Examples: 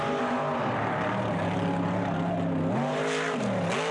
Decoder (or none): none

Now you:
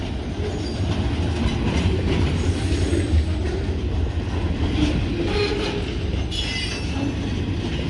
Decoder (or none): none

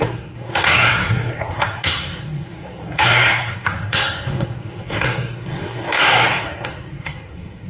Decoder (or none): codec, SNAC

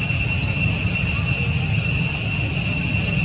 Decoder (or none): none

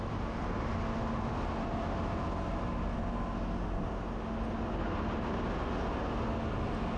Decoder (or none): none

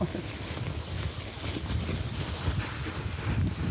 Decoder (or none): none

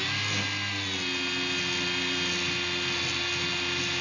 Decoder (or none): none